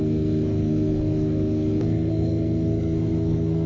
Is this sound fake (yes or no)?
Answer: yes